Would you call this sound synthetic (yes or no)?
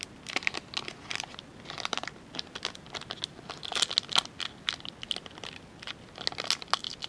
no